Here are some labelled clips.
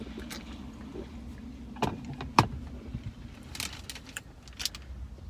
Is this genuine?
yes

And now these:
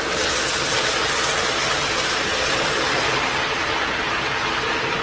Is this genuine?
yes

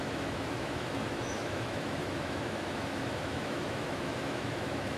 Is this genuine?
no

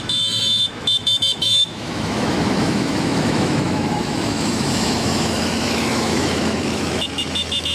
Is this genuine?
no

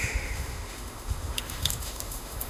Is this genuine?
no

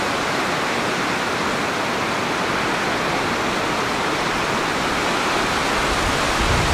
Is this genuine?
yes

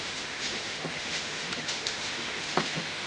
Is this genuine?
no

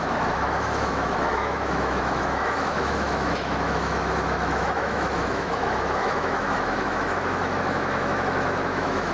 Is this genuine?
no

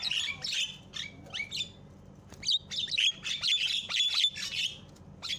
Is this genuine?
yes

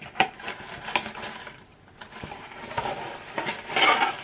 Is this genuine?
yes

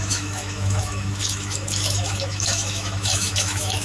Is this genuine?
no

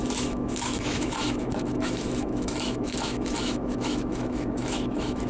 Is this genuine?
no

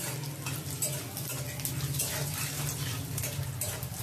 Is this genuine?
yes